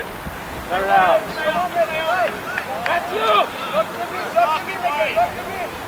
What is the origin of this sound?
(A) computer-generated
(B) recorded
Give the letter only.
B